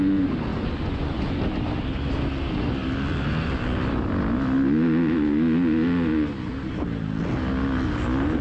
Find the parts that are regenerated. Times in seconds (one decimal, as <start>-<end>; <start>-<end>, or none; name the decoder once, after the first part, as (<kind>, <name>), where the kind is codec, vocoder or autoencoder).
0.5-1.4 (vocoder, Vocos)